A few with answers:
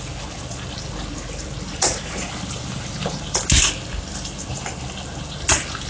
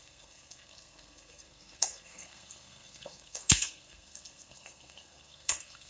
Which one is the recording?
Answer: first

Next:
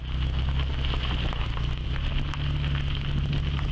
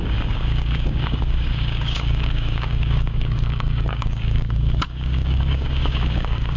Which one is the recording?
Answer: first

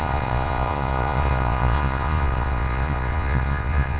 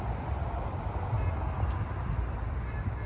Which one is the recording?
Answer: second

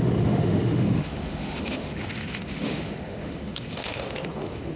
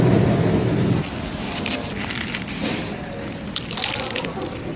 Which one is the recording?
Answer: second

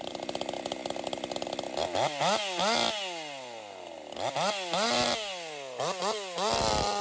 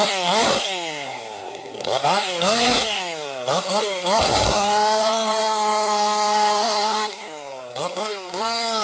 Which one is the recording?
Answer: first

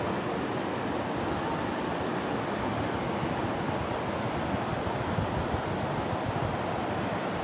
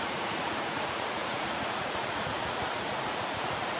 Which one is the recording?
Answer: first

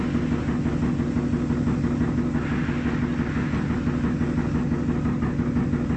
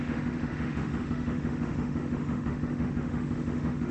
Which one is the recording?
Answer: first